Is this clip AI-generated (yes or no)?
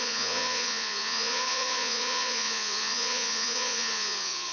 yes